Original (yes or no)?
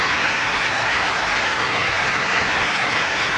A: no